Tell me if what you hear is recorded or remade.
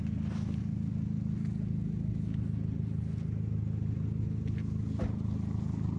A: recorded